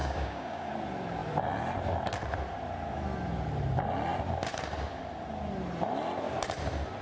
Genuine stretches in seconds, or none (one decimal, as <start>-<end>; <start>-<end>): 0.7-7.0